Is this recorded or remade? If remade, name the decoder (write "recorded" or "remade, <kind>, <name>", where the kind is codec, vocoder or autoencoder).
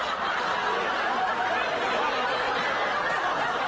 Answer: recorded